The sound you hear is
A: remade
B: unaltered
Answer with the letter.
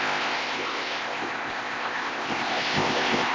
A